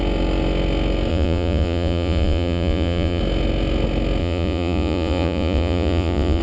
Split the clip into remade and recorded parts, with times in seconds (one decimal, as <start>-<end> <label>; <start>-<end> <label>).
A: 0.0-1.1 recorded; 1.1-3.2 remade; 3.2-4.2 recorded; 4.2-6.4 remade